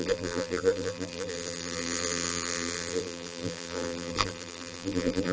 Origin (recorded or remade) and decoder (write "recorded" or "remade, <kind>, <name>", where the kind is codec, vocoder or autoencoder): remade, vocoder, BigVGAN v2